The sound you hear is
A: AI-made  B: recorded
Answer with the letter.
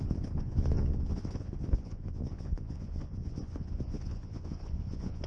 A